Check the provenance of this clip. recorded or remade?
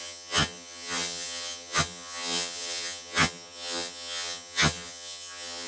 remade